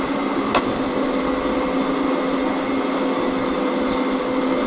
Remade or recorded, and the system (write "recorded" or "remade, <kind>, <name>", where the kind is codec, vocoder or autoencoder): recorded